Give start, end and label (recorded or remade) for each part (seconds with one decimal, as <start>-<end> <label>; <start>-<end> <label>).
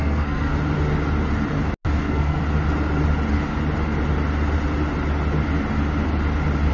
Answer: 0.0-0.5 remade; 0.5-2.0 recorded; 2.0-2.4 remade; 2.4-6.7 recorded